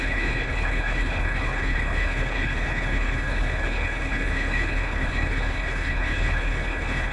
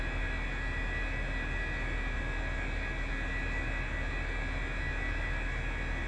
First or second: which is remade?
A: first